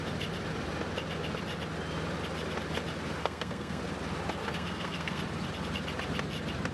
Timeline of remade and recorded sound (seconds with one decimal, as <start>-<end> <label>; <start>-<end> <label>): 0.0-3.2 recorded; 3.2-3.8 remade; 3.8-4.4 recorded; 4.4-5.2 remade; 5.2-6.7 recorded